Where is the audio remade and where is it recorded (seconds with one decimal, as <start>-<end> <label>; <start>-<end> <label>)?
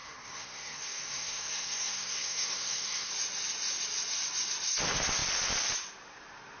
0.0-3.1 remade; 3.1-6.6 recorded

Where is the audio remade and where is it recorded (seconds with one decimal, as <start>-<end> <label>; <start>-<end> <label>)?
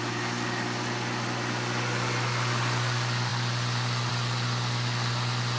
0.0-5.6 recorded